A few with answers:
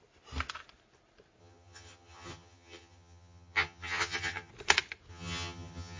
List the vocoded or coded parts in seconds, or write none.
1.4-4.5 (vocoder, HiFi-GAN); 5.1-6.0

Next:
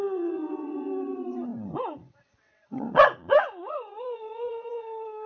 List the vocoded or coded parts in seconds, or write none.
0.0-5.3 (vocoder, WaveNeXt)

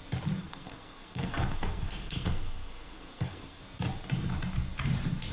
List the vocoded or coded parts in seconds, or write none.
0.4-3.6 (codec, SNAC)

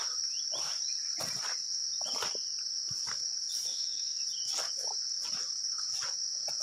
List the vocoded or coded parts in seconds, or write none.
3.7-4.2 (autoencoder, DAC-VAE)

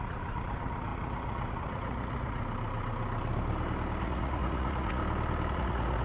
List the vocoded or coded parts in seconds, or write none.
0.0-2.4 (vocoder, Vocos); 4.0-5.0; 5.5-6.0

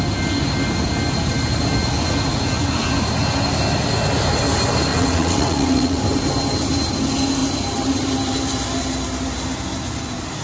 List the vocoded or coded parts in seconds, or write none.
4.9-6.0 (vocoder, WaveNeXt)

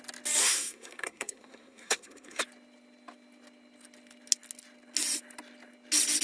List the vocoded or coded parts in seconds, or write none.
0.4-2.4 (codec, SNAC)